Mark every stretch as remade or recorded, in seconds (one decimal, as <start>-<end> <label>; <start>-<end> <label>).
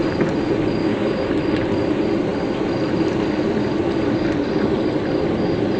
0.0-0.8 recorded; 0.8-1.3 remade; 1.3-5.8 recorded